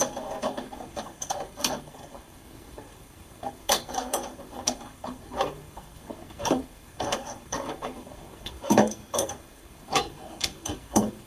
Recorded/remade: remade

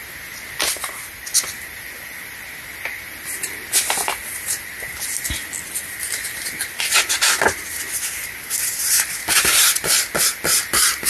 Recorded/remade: recorded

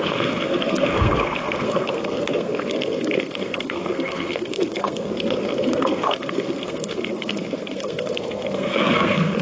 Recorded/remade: remade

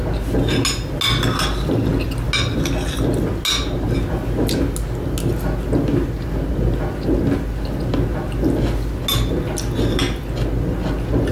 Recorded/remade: recorded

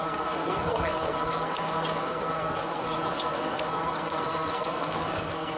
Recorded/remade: remade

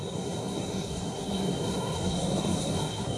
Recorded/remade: remade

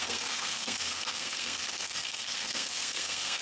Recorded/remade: remade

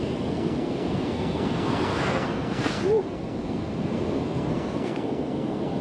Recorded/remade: remade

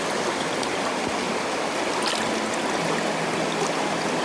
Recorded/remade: recorded